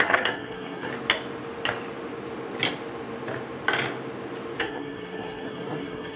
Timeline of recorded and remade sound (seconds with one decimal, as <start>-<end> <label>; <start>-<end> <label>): 0.0-0.9 remade; 0.9-4.6 recorded; 4.6-6.2 remade